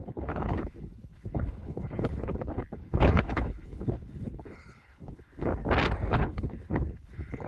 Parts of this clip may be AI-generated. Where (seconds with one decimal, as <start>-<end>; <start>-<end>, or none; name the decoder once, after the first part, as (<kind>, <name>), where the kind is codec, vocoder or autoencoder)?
0.0-5.5 (codec, HILCodec); 6.1-7.5